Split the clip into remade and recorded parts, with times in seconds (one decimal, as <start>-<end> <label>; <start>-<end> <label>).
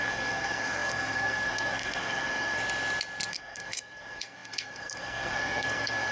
0.0-2.6 remade; 2.6-3.3 recorded; 3.3-6.1 remade